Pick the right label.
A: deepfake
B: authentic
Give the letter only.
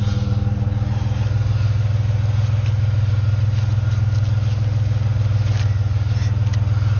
B